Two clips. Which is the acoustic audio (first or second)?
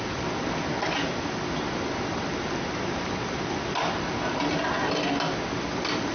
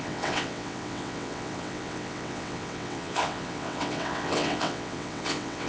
first